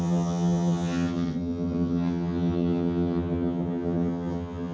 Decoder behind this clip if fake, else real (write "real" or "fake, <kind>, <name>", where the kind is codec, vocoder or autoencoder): fake, vocoder, HiFi-GAN